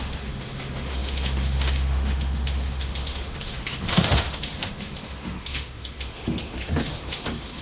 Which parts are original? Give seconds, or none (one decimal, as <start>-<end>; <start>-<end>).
none

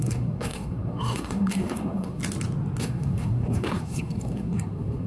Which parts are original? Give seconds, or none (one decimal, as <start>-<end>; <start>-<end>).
2.2-2.8

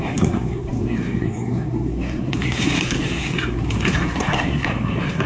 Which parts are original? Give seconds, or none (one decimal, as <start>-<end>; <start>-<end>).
none

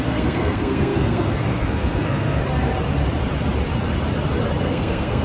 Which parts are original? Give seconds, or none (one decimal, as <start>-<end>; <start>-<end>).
2.4-4.6

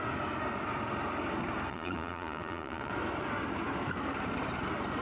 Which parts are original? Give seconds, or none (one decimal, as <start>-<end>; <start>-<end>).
0.0-1.7; 2.9-5.0